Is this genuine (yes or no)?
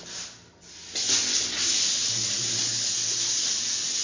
yes